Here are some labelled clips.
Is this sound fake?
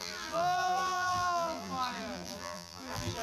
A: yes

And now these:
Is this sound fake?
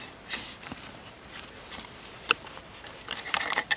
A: yes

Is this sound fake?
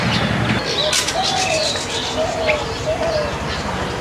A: no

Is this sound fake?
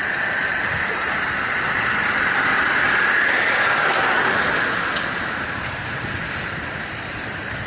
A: yes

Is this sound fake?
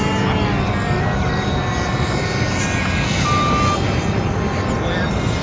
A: no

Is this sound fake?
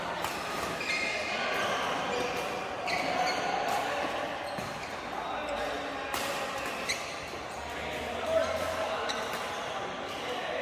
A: no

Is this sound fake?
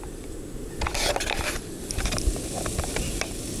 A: yes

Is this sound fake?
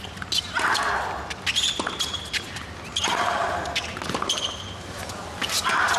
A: no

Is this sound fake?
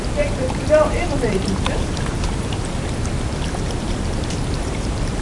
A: yes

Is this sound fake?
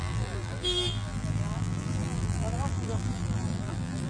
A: yes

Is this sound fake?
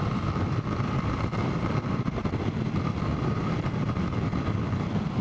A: yes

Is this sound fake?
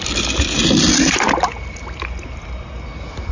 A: no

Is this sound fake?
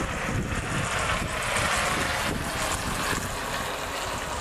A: no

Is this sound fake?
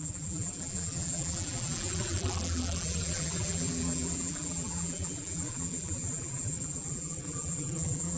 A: yes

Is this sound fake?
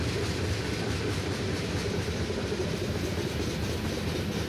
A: yes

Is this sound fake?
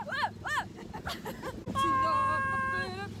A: no